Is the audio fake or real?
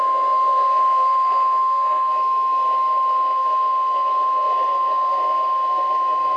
fake